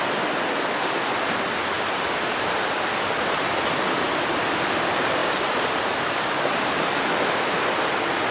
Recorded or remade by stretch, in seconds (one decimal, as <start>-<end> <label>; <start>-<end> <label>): 0.0-8.3 recorded